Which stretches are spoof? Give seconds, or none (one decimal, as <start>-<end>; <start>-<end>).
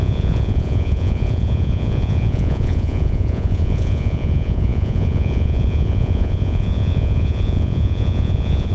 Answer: 0.0-8.7